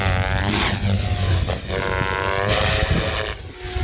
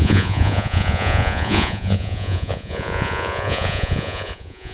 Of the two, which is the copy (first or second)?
second